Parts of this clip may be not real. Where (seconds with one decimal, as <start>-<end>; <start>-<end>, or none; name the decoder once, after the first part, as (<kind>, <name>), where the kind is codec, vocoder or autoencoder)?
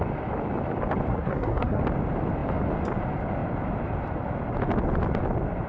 1.1-1.8 (codec, SNAC)